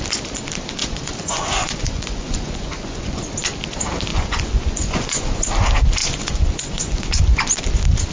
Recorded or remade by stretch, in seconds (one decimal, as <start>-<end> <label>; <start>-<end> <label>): 0.0-0.8 recorded; 0.8-3.2 remade; 3.2-4.1 recorded; 4.1-5.4 remade; 5.4-6.0 recorded; 6.0-7.2 remade; 7.2-8.1 recorded